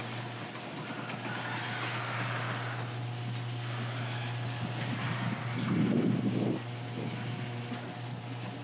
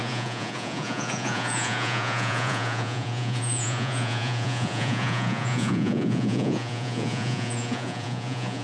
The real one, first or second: first